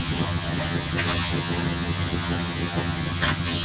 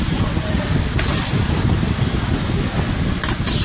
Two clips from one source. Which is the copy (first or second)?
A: first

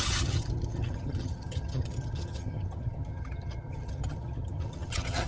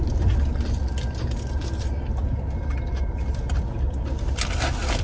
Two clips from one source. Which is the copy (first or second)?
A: first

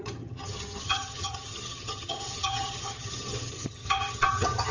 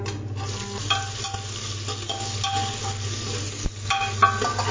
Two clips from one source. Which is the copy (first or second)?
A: first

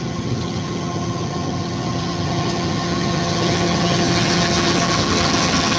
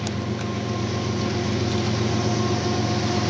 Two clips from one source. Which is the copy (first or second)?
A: first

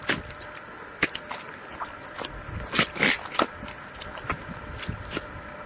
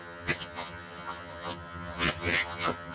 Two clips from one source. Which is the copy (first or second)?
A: second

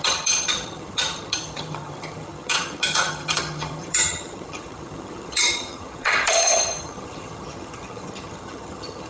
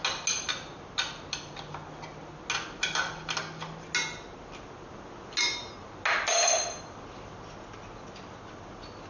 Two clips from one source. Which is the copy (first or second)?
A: first